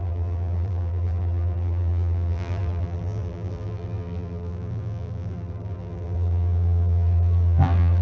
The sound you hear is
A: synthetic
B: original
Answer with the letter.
A